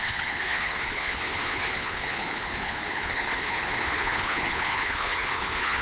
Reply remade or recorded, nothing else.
remade